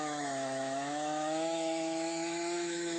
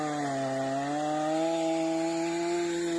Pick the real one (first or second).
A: second